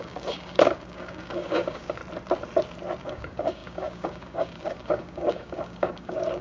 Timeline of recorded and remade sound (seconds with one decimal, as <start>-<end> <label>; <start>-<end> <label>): 0.0-2.0 remade; 2.0-3.0 recorded; 3.0-6.4 remade